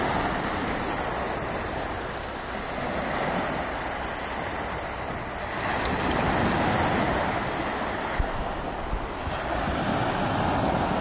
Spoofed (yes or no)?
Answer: no